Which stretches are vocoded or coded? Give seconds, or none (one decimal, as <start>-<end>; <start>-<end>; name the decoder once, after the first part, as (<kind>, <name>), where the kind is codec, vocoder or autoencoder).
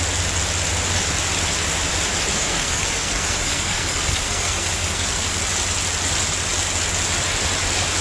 2.3-5.4 (codec, SNAC)